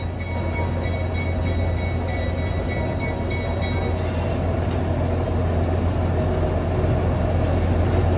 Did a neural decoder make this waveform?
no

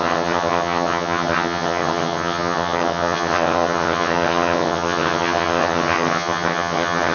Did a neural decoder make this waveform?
yes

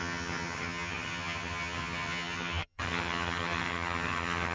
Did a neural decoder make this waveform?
yes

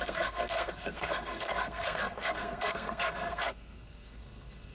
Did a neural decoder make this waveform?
yes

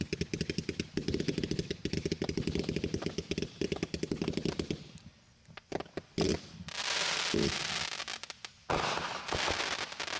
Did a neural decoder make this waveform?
no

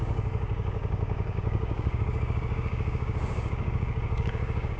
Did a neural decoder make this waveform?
yes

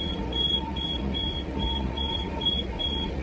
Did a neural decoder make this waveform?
yes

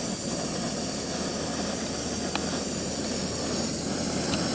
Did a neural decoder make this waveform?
no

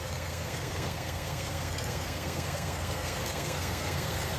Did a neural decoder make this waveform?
yes